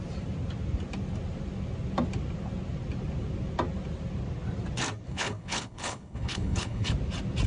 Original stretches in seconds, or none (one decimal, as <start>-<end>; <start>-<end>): 0.0-5.1; 6.9-7.5